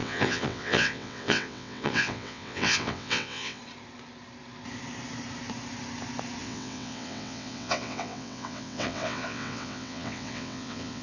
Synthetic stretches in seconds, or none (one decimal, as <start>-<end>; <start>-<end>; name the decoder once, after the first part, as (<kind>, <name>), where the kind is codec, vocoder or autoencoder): 0.0-3.6 (vocoder, WaveNeXt); 6.4-11.0